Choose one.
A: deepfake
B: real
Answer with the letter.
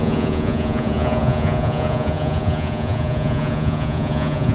A